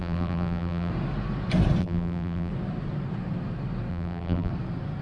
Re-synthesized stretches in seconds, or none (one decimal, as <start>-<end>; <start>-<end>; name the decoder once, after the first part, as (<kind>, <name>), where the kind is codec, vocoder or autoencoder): 0.0-0.9 (vocoder, BigVGAN v2); 1.8-2.5; 3.9-4.5